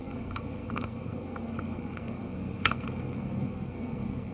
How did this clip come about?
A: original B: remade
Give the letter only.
B